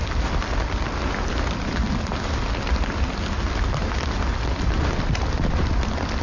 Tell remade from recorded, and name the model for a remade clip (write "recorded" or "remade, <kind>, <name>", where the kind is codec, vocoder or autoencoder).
recorded